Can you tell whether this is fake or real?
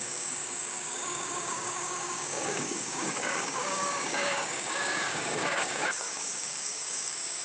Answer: fake